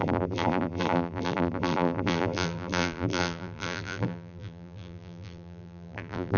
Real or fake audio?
fake